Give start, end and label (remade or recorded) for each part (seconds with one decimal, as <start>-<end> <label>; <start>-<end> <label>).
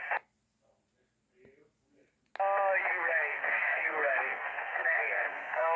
0.0-2.9 recorded; 2.9-5.8 remade